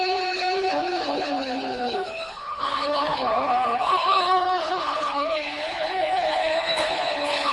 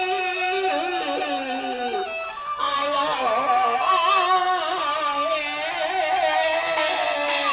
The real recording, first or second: second